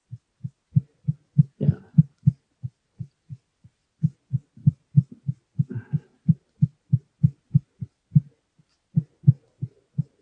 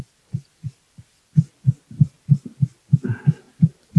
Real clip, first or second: first